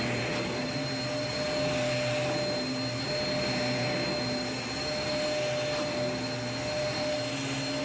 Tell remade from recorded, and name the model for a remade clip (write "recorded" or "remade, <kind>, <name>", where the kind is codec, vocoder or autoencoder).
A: recorded